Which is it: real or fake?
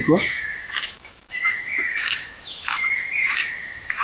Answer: fake